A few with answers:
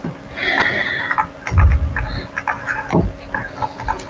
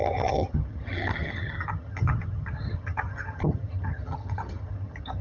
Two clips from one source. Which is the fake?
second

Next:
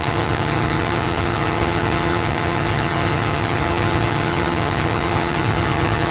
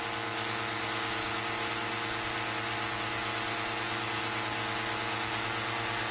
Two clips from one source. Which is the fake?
first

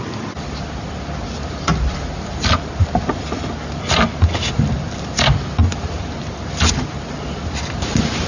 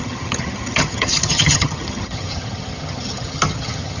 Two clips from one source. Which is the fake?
second